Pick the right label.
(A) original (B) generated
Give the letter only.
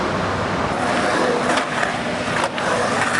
A